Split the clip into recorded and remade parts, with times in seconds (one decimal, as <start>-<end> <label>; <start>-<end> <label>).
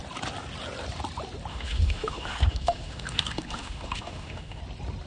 0.0-1.5 recorded; 1.5-4.6 remade; 4.6-5.1 recorded